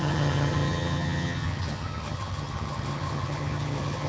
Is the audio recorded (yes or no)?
no